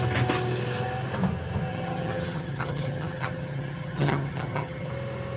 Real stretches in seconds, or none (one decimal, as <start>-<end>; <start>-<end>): 0.0-1.7; 4.9-5.4

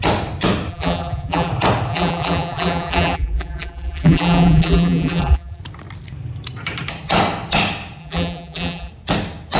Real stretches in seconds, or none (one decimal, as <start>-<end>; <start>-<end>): 0.0-0.7; 1.5-1.9; 5.6-8.0; 8.9-9.6

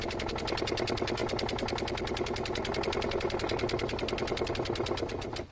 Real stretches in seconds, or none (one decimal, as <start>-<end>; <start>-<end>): 0.0-5.5

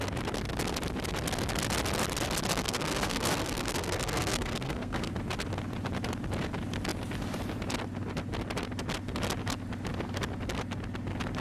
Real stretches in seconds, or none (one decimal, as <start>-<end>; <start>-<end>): 0.0-2.5; 5.1-11.4

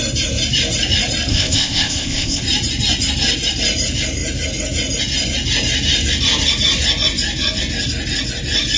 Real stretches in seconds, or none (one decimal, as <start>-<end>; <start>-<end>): 0.0-1.3; 2.4-8.8

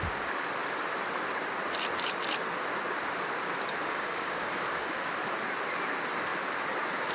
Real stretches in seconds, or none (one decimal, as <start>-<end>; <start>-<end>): 0.0-3.8; 5.1-7.1

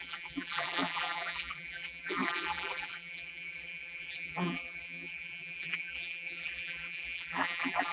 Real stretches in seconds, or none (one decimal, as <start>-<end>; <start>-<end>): none

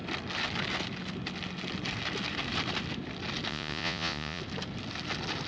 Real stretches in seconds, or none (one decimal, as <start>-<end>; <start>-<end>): 0.0-3.5; 4.4-5.5